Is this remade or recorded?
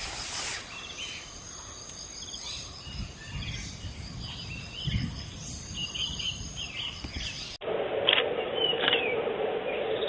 recorded